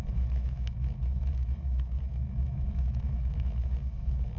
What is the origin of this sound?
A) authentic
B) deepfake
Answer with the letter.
B